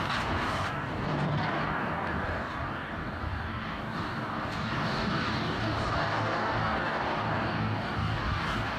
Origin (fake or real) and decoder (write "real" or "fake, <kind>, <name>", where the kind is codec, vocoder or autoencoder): fake, codec, DAC